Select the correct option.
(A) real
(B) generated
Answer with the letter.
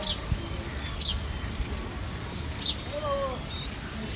A